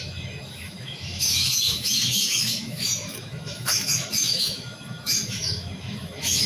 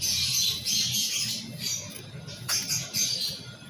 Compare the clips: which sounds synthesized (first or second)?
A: first